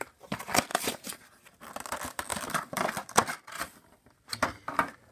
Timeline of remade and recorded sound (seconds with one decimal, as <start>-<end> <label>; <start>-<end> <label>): 0.0-0.7 recorded; 0.7-1.9 remade; 1.9-5.1 recorded